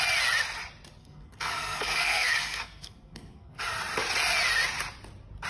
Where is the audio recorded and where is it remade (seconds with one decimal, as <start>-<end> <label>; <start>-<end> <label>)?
0.0-1.0 recorded; 1.0-3.6 remade; 3.6-5.5 recorded